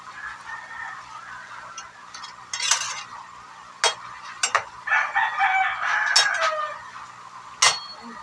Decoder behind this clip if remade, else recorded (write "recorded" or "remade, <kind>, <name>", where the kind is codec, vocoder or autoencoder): recorded